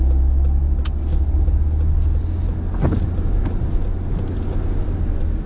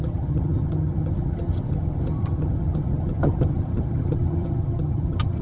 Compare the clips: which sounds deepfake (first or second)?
second